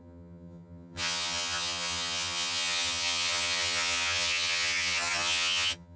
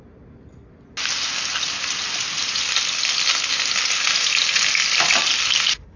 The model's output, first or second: first